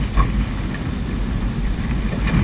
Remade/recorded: recorded